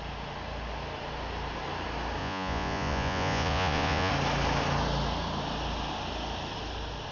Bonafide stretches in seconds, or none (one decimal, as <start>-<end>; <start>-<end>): 0.0-2.2; 4.1-7.1